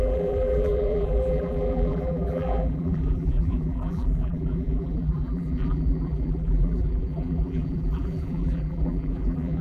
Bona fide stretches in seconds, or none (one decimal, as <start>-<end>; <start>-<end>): none